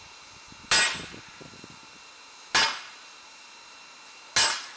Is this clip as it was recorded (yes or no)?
yes